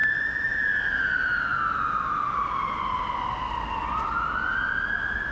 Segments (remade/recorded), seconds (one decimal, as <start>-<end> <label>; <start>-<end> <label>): 0.0-5.3 recorded